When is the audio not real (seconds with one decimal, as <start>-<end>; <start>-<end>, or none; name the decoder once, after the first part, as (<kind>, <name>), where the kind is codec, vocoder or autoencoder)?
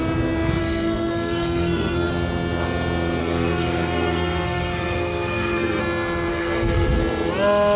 0.6-2.1 (codec, SNAC); 3.2-5.8; 6.3-7.0